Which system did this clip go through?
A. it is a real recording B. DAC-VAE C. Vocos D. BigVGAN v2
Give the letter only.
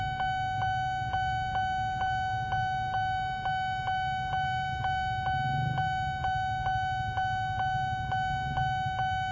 A